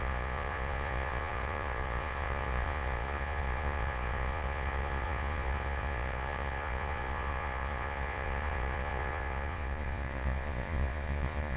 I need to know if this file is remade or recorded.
remade